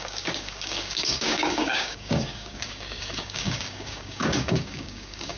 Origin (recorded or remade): remade